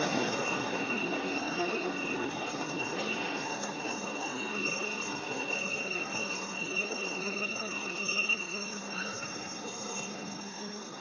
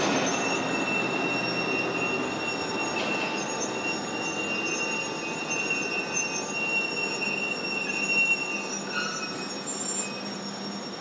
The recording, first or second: second